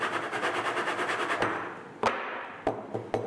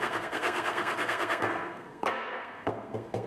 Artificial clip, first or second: second